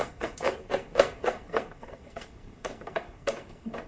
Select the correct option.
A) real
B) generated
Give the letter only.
B